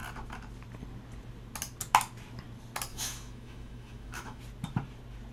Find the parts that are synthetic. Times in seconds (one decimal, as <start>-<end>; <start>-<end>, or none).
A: 2.9-4.4